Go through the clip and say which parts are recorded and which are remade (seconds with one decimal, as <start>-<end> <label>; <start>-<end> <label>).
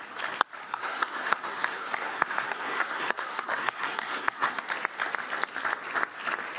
0.0-0.6 recorded; 0.6-4.6 remade; 4.6-6.6 recorded